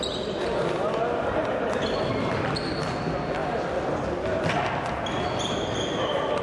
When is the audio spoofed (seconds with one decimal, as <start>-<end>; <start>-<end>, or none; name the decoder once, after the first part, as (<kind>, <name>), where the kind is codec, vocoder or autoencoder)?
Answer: none